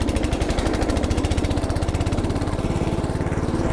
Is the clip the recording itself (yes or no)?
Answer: no